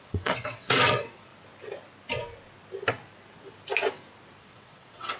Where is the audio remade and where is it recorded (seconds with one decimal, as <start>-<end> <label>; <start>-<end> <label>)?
0.0-1.3 remade; 1.3-4.4 recorded; 4.4-5.2 remade